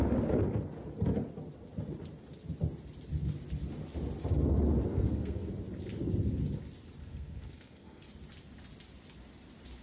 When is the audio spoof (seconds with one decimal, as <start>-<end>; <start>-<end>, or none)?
4.9-5.5; 7.0-8.1